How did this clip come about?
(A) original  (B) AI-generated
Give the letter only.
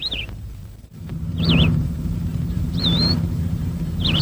B